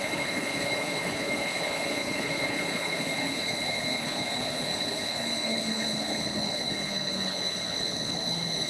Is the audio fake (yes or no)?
yes